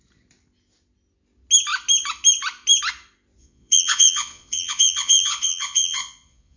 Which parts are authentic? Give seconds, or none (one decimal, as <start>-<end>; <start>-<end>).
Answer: 0.0-3.4

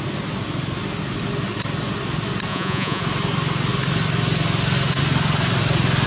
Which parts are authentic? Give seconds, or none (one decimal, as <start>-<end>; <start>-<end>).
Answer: 0.0-2.5; 3.0-6.1